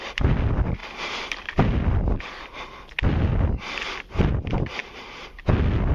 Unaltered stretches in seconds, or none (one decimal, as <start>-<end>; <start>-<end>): 0.0-4.8; 5.4-5.9